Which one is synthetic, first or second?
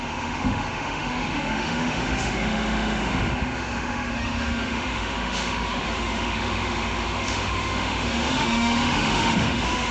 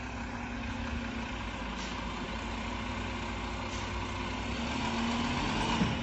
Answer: first